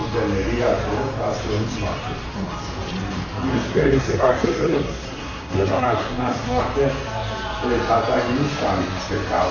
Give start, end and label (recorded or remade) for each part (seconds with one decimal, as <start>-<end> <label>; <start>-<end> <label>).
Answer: 0.0-3.5 recorded; 3.5-6.6 remade; 6.6-9.5 recorded